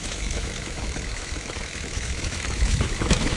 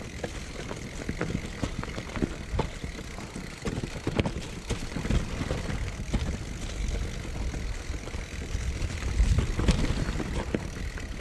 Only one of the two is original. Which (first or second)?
second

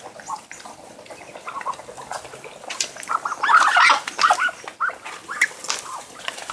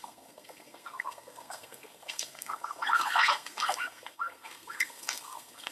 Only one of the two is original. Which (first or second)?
first